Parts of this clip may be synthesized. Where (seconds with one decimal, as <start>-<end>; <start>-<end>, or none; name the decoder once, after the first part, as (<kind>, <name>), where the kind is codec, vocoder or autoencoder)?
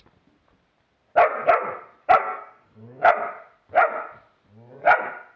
2.2-3.1 (codec, SNAC)